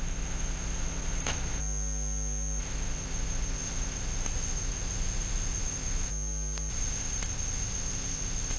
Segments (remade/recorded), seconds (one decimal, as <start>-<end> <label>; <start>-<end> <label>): 0.0-1.6 remade; 1.6-2.6 recorded; 2.6-6.1 remade; 6.1-6.7 recorded; 6.7-8.6 remade